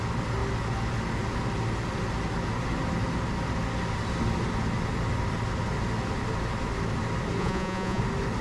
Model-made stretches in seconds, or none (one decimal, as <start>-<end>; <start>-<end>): 7.4-8.0